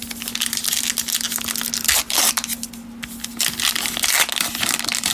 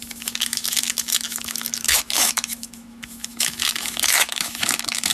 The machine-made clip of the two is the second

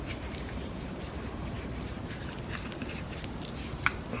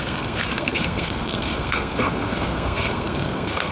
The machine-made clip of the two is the second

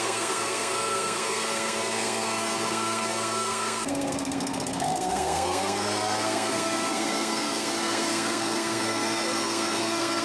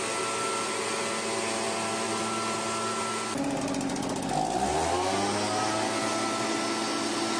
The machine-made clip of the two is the first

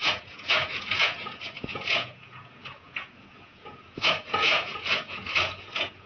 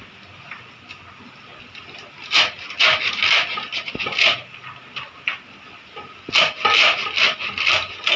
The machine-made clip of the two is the first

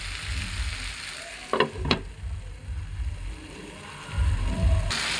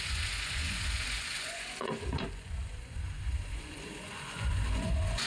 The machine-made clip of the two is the second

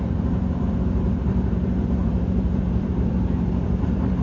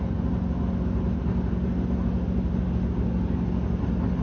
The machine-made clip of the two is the first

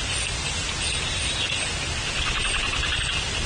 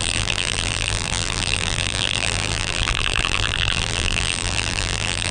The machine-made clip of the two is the second